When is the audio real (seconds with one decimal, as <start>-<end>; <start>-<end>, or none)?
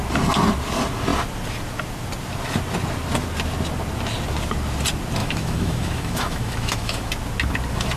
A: 0.0-5.2; 7.1-8.0